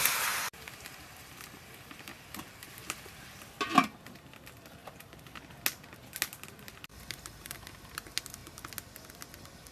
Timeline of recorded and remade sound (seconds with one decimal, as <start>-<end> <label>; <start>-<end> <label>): 0.0-4.8 recorded; 4.8-5.4 remade; 5.4-6.9 recorded; 6.9-7.7 remade; 7.7-9.7 recorded